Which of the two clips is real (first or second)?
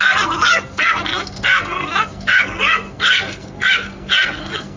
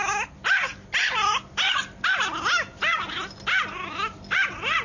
second